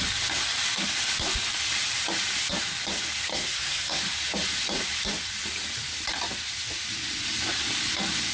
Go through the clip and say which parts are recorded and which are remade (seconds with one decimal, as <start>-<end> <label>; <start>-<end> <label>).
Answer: 0.0-3.3 recorded; 3.3-4.0 remade; 4.0-8.3 recorded